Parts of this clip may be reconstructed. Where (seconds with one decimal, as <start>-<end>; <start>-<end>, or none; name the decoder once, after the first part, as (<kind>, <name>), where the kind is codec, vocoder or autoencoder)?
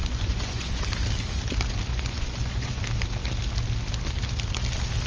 0.0-0.8 (vocoder, Vocos); 1.9-2.8